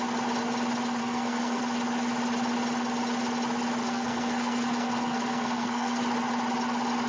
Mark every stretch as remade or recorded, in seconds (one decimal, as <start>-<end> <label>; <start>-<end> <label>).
0.0-1.0 recorded; 1.0-1.6 remade; 1.6-3.8 recorded; 3.8-6.0 remade; 6.0-7.1 recorded